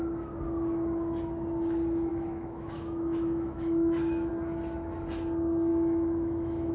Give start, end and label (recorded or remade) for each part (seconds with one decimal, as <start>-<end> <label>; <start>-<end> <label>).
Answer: 0.0-2.1 recorded; 2.1-4.3 remade; 4.3-5.7 recorded; 5.7-6.7 remade